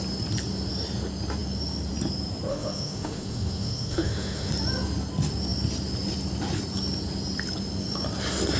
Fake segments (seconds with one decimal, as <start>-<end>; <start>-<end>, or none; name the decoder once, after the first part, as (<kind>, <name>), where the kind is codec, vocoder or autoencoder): 2.5-4.5 (autoencoder, DAC-VAE)